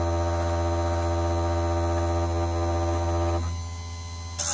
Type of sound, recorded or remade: recorded